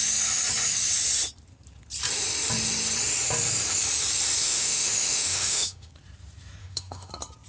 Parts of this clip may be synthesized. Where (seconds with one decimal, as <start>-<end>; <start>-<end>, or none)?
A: 4.4-5.9; 6.6-7.1